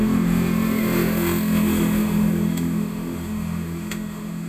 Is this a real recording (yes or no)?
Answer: no